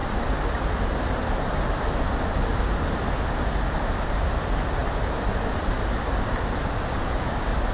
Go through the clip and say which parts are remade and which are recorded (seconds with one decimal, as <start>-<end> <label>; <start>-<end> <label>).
0.0-4.8 recorded; 4.8-6.7 remade; 6.7-7.7 recorded